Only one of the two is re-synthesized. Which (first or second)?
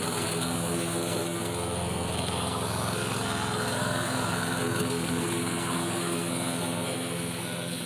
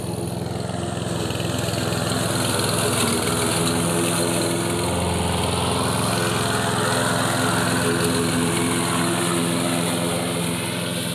first